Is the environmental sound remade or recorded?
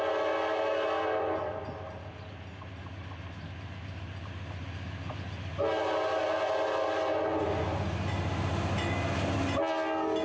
recorded